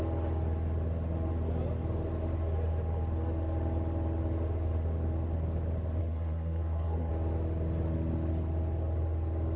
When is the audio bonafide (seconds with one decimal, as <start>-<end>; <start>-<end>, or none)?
0.0-6.0; 7.1-9.6